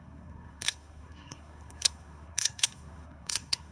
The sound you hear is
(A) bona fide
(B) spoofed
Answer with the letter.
B